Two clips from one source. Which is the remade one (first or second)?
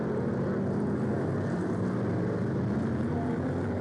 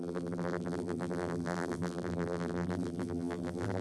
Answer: second